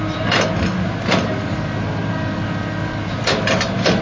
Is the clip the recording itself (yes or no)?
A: yes